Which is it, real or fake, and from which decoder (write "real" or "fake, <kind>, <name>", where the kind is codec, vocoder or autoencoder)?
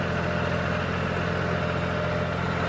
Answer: real